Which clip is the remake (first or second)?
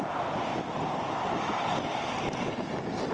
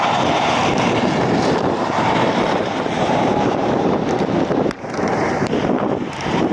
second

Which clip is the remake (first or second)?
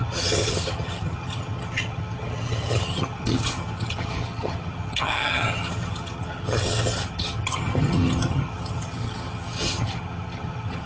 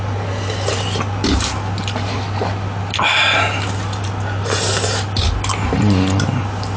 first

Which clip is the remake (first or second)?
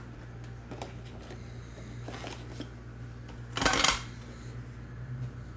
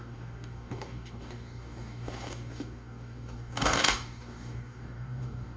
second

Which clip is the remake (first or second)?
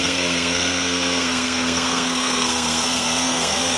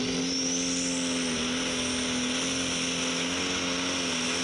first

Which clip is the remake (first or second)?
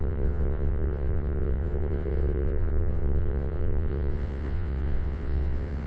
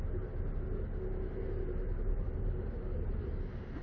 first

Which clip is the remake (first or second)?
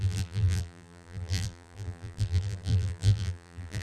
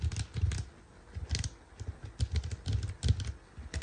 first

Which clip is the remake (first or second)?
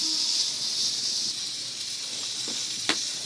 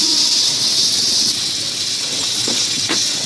second